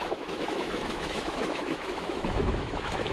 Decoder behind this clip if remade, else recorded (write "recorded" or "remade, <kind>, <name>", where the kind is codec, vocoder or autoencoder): remade, autoencoder, DAC-VAE